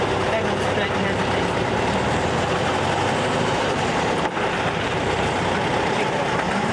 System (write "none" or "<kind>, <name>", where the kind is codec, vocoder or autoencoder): none